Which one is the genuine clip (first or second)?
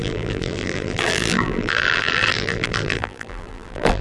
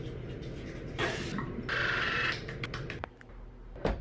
second